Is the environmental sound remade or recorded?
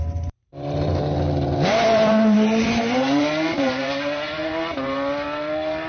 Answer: remade